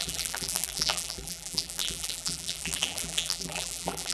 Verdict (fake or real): fake